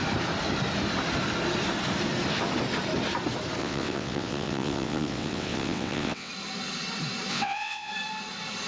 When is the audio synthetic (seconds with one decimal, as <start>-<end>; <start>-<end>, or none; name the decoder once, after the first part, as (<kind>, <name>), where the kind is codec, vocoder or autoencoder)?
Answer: 3.6-6.3 (vocoder, WaveNeXt); 7.3-7.9